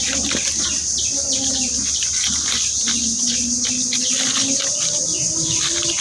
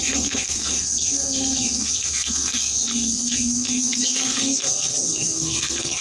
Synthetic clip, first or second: second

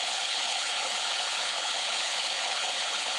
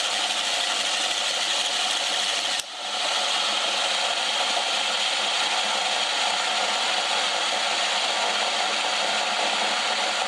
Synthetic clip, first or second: first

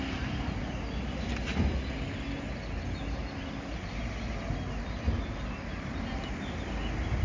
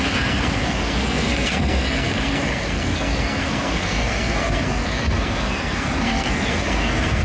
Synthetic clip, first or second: second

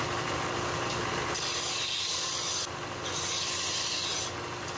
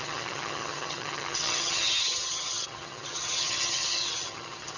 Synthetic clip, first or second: second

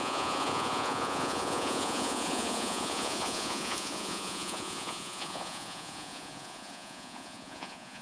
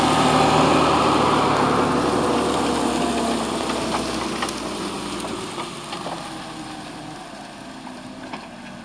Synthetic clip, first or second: first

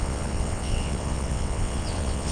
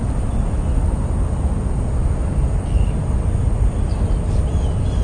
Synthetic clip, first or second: first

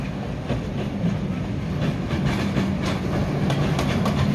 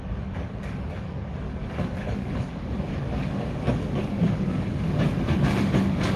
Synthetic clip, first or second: second